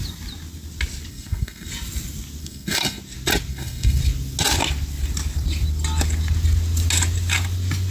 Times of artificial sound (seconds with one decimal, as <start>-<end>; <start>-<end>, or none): 1.1-1.7; 2.4-3.0; 3.5-4.0